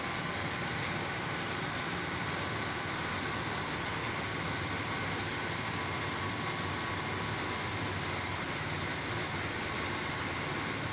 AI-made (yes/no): no